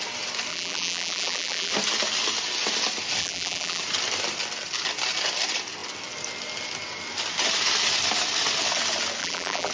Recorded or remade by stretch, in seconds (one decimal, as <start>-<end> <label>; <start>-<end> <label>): 0.0-0.5 recorded; 0.5-1.7 remade; 1.7-3.2 recorded; 3.2-3.8 remade; 3.8-9.2 recorded; 9.2-9.7 remade